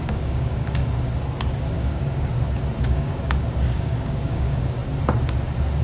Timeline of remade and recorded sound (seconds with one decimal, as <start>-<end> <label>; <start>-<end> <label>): 0.0-0.8 remade; 0.8-1.5 recorded; 1.5-2.3 remade; 2.3-2.8 recorded; 2.8-4.8 remade; 4.8-5.8 recorded

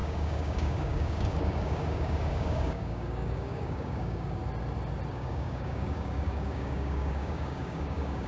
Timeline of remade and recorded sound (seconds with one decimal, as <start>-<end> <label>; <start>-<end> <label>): 0.0-4.4 remade; 4.4-5.1 recorded; 5.1-8.3 remade